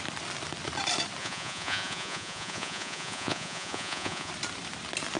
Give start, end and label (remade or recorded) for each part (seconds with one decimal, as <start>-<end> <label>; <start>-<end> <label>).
0.0-1.2 recorded; 1.2-4.3 remade; 4.3-5.2 recorded